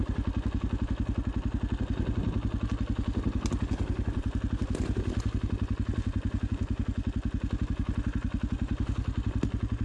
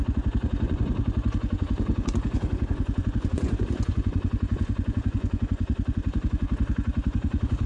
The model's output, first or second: second